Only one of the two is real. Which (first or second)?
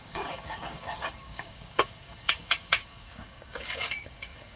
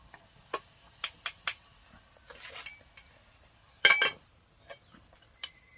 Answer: second